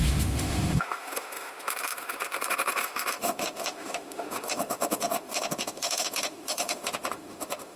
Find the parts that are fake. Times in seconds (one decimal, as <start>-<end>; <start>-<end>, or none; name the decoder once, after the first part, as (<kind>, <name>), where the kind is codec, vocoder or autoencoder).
0.0-7.8 (autoencoder, DAC-VAE)